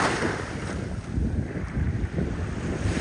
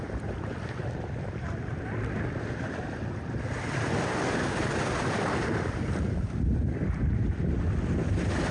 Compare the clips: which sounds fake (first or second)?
second